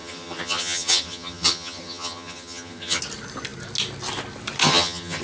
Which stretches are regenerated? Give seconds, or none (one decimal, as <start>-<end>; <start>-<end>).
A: 0.0-3.0; 4.6-5.2